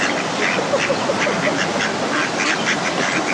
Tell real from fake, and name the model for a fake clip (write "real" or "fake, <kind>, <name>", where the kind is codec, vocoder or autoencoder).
real